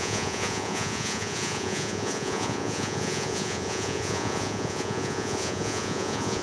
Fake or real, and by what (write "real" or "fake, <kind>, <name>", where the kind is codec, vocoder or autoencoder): fake, vocoder, Vocos